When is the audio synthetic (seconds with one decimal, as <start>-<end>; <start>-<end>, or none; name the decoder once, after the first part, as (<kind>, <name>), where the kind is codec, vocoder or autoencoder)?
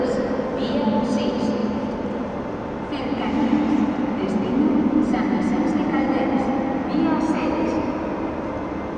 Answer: 1.6-2.4 (vocoder, BigVGAN v2)